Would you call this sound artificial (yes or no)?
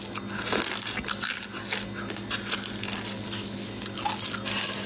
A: no